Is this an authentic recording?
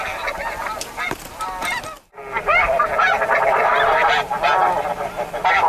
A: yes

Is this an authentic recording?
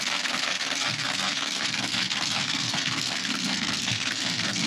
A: no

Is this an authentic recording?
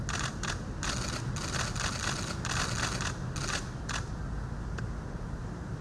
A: yes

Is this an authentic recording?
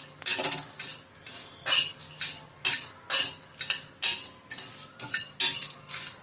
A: yes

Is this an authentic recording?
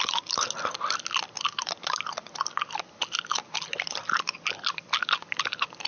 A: yes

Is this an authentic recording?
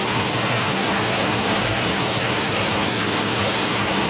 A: no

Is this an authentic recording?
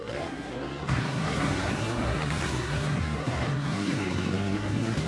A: no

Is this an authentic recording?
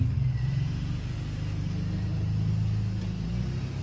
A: yes